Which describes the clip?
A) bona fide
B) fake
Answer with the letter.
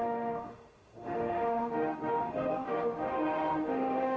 B